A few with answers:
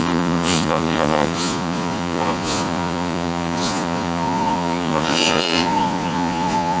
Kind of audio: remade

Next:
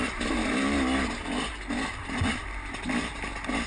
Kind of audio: recorded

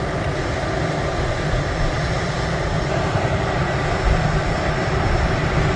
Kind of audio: recorded